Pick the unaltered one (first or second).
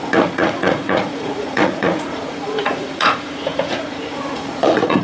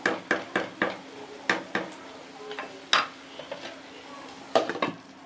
second